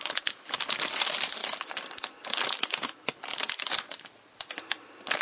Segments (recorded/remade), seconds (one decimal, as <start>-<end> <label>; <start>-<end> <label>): 0.0-5.2 recorded